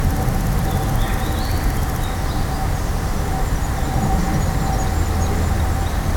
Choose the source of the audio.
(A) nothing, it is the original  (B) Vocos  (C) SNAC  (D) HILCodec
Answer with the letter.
A